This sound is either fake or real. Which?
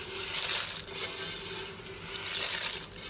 real